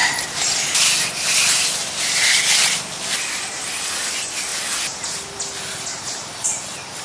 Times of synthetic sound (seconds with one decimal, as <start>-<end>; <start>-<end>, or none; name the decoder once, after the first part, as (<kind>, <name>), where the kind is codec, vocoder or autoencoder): none